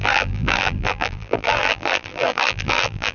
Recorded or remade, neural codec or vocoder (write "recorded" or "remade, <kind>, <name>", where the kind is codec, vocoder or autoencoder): remade, vocoder, BigVGAN v2